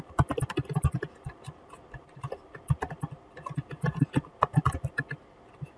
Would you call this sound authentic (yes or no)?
yes